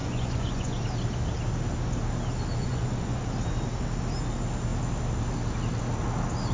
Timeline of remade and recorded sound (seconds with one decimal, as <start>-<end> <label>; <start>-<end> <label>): 0.0-0.8 remade; 0.8-2.6 recorded; 2.6-3.2 remade; 3.2-6.5 recorded